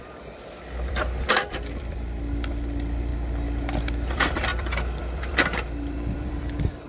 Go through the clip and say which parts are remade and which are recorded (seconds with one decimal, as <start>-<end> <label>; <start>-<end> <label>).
0.0-3.1 remade; 3.1-3.8 recorded; 3.8-6.9 remade